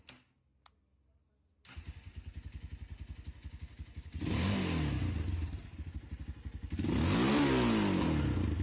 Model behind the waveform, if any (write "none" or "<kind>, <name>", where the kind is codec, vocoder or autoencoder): none